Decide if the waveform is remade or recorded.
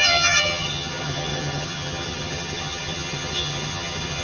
remade